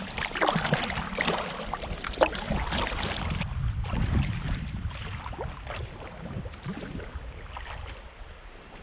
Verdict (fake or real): fake